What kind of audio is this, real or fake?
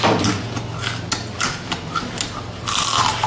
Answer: real